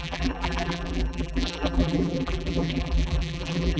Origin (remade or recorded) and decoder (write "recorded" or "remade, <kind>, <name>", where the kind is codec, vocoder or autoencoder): remade, vocoder, BigVGAN v2